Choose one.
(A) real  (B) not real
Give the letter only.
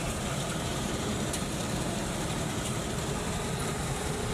B